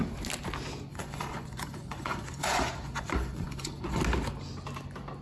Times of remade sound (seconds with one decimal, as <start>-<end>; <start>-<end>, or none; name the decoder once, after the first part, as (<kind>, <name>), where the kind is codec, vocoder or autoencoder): 0.9-4.0 (vocoder, Vocos)

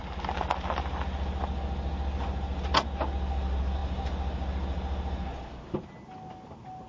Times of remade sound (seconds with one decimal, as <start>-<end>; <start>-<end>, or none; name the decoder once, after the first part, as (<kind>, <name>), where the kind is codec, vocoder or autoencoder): none

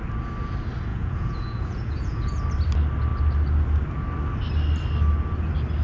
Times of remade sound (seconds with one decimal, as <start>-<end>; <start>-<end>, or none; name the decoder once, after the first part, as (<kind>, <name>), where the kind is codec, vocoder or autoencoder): 0.9-2.4 (vocoder, Vocos)

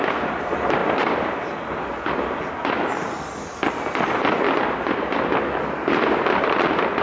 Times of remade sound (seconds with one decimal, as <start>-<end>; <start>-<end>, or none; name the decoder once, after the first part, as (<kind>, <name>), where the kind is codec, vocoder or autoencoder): none

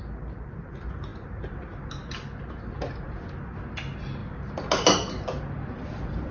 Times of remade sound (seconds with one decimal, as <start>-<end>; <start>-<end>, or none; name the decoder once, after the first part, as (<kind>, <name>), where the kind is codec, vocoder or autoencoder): none

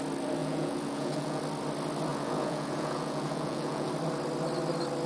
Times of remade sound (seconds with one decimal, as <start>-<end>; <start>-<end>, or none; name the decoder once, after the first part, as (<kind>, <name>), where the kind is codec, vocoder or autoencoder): 0.4-1.4 (vocoder, Vocos); 2.1-3.9

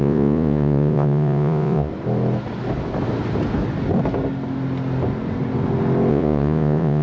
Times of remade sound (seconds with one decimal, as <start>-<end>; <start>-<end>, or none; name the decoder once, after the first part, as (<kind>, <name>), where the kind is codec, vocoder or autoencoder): 0.0-1.9 (vocoder, Vocos); 6.1-7.0